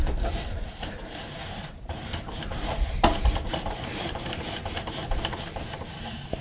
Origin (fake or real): fake